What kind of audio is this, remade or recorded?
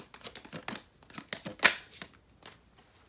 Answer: recorded